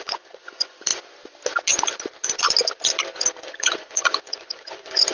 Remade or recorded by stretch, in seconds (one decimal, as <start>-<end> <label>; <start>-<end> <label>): 0.0-0.9 remade; 0.9-3.5 recorded; 3.5-5.1 remade